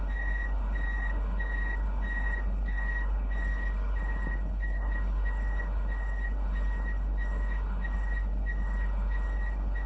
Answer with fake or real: fake